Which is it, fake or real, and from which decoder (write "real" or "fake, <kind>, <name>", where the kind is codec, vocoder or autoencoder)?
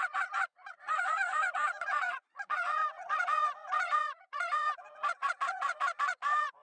fake, vocoder, Vocos